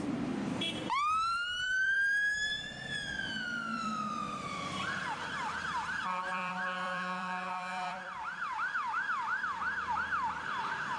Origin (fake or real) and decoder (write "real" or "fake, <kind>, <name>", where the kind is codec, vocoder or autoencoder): fake, vocoder, BigVGAN v2